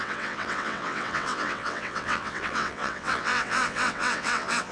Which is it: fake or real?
fake